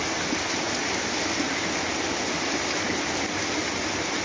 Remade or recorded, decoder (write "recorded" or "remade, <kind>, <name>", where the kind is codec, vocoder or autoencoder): recorded